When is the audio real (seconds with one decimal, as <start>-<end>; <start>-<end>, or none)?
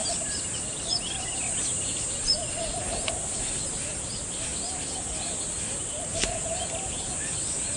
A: 0.0-7.8